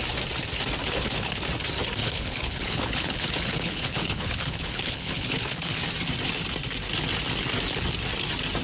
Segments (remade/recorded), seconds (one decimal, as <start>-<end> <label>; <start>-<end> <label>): 0.0-0.8 recorded; 0.8-1.4 remade; 1.4-2.0 recorded; 2.0-5.8 remade; 5.8-8.6 recorded